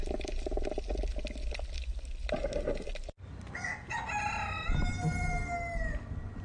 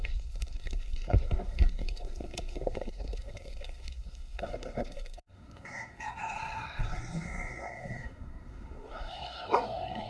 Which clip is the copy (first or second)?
second